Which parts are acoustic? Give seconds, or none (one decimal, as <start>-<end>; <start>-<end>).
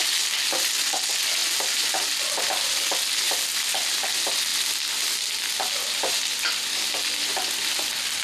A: 0.0-8.2